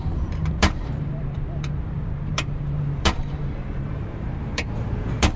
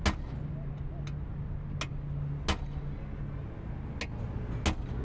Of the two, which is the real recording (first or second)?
second